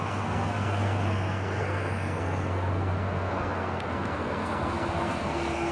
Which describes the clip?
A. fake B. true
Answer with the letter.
A